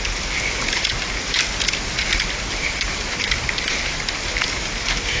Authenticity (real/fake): real